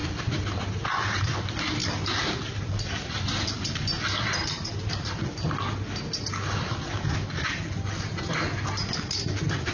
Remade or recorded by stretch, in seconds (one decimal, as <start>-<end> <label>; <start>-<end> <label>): 0.0-4.7 remade; 4.7-9.7 recorded